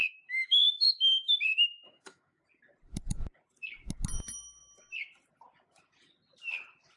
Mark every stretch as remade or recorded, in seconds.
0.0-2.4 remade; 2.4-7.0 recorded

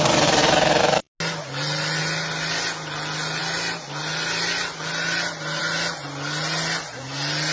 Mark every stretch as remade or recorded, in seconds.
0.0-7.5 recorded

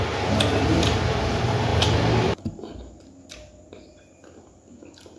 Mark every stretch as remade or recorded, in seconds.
0.0-5.2 recorded

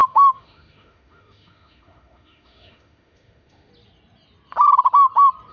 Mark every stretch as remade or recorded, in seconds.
0.0-3.7 remade; 3.7-5.5 recorded